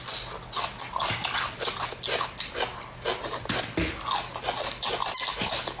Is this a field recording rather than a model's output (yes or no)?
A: yes